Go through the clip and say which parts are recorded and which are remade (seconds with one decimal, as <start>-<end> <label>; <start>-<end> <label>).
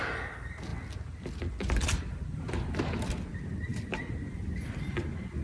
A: 0.0-5.4 recorded